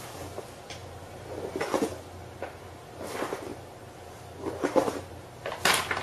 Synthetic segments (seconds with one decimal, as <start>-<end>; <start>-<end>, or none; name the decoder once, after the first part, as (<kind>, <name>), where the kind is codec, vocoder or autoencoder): none